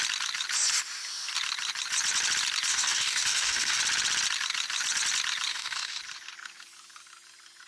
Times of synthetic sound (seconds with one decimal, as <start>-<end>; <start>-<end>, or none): 2.7-3.8; 5.5-6.0